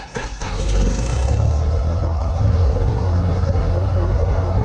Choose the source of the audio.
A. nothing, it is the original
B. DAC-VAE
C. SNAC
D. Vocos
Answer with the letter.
C